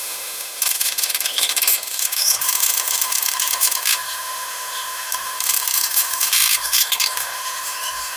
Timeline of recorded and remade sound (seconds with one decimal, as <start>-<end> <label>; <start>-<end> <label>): 0.0-8.2 remade